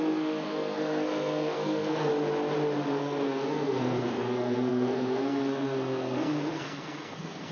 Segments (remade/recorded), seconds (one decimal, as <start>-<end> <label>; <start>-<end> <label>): 0.0-2.1 remade; 2.1-3.0 recorded; 3.0-7.5 remade